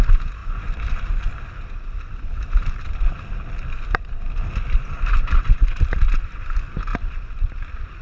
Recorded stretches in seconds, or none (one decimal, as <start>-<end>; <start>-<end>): 0.0-8.0